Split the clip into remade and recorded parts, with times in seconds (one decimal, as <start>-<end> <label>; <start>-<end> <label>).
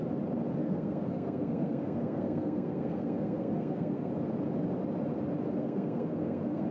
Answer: 0.0-0.6 recorded; 0.6-4.1 remade; 4.1-5.6 recorded; 5.6-6.7 remade